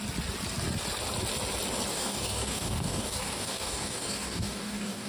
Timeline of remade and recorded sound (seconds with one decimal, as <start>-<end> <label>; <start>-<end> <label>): 0.0-1.9 recorded; 1.9-5.1 remade